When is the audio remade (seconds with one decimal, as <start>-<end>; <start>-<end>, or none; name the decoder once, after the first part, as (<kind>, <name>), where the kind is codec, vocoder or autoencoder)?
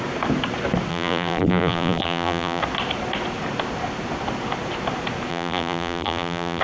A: 0.9-2.6 (vocoder, BigVGAN v2); 5.3-6.6